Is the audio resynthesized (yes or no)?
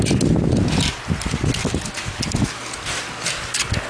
no